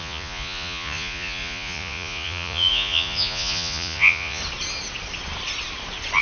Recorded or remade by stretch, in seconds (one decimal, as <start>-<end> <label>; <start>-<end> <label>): 0.0-4.4 remade; 4.4-6.2 recorded